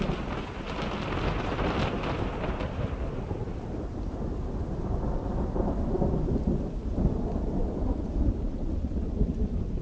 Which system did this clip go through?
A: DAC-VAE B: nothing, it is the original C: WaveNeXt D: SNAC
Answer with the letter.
B